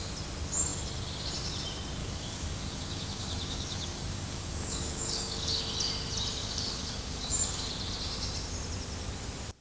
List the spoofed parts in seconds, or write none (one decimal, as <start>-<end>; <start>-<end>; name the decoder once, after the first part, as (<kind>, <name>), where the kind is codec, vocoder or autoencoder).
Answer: 2.0-5.6 (codec, DAC); 6.4-7.7